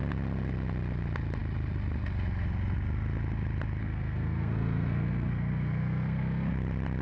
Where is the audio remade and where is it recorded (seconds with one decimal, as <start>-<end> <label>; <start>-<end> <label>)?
0.0-3.8 recorded; 3.8-6.5 remade; 6.5-7.0 recorded